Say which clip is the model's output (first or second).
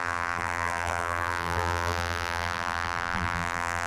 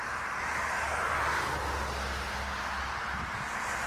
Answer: first